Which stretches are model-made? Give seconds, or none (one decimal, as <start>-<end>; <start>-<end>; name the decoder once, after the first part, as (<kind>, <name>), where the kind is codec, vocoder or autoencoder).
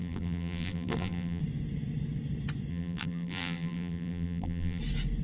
0.0-1.4 (vocoder, BigVGAN v2); 2.7-4.8